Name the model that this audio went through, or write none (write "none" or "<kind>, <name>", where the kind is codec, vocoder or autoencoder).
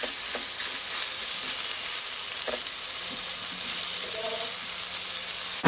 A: none